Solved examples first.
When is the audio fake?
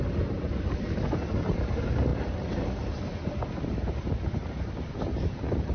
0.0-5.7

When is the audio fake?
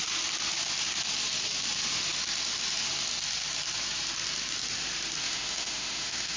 5.2-6.4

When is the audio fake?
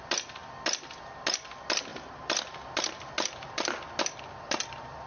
none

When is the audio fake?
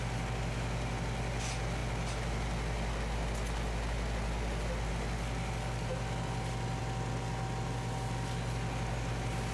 none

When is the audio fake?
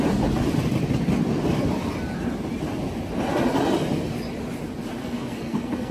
5.0-5.9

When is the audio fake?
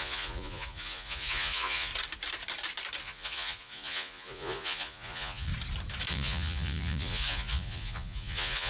0.0-1.9; 3.0-5.5; 6.1-8.7